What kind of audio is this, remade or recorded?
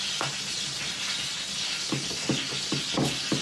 recorded